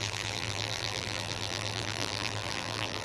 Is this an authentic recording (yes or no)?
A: no